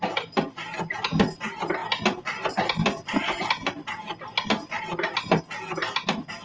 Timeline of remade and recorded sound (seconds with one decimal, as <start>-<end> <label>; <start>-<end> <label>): 0.0-6.4 recorded